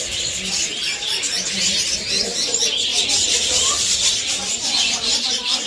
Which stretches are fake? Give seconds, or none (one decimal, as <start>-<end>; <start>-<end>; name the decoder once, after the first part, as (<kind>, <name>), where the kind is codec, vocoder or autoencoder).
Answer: 0.0-5.7 (vocoder, BigVGAN v2)